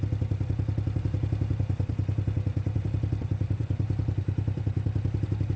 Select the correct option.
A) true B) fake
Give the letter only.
B